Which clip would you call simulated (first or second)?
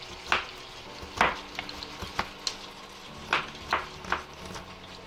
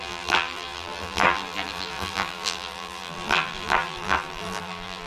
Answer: second